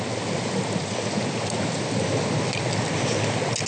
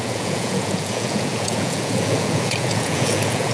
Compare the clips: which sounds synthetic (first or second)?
second